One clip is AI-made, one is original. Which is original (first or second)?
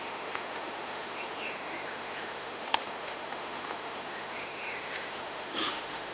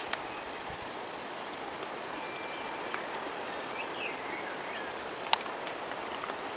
second